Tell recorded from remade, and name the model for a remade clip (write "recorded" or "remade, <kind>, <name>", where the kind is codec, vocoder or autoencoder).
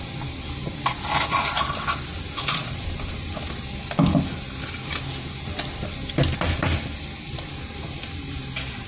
recorded